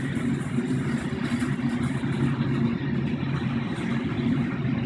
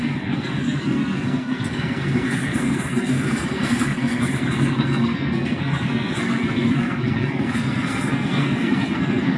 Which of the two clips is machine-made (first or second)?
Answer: second